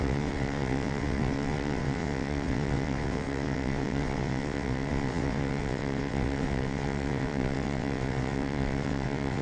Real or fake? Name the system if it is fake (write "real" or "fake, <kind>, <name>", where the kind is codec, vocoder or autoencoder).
fake, vocoder, WaveNeXt